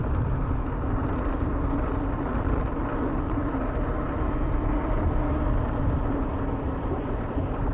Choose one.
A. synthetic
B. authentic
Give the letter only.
B